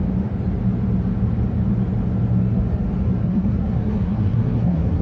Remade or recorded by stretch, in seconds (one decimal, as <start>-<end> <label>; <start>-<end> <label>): 0.0-3.2 recorded; 3.2-5.0 remade